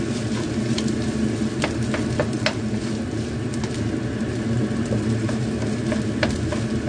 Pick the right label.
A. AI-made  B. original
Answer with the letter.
B